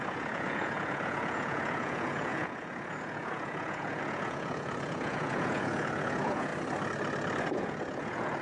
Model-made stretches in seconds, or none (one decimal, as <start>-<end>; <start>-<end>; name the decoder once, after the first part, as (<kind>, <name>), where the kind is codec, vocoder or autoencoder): 0.0-6.5 (vocoder, Vocos); 7.4-8.4